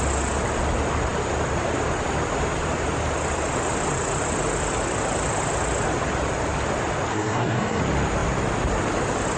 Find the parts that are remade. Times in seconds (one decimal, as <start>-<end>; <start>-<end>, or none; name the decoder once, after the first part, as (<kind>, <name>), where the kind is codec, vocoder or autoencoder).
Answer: 7.1-7.8 (codec, SNAC)